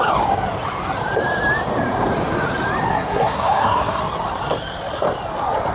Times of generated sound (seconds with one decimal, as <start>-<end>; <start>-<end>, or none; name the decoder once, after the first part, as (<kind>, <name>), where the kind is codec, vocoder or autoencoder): 2.9-4.0 (codec, SNAC)